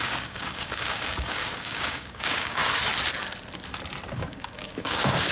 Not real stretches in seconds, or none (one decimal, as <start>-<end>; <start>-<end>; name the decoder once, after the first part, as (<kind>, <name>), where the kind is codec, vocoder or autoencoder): 0.0-2.6 (codec, DAC); 4.2-5.3

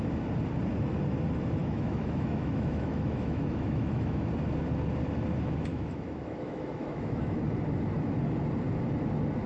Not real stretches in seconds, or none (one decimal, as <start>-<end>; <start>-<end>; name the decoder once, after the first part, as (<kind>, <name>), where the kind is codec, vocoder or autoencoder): 1.6-4.3 (autoencoder, DAC-VAE); 5.7-7.4

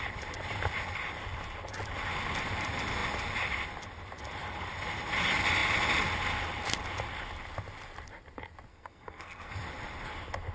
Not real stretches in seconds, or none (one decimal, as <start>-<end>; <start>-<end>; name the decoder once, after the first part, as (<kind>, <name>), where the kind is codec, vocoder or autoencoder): 8.7-9.5 (codec, SNAC)

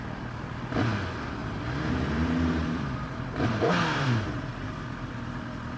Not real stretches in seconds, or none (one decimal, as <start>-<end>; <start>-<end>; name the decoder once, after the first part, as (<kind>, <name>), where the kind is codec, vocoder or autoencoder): 1.4-4.5 (vocoder, BigVGAN v2)

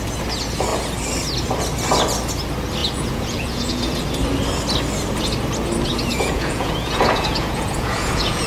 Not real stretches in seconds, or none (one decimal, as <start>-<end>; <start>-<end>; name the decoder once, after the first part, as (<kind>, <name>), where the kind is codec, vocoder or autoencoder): 2.8-4.0 (vocoder, Vocos); 6.1-8.5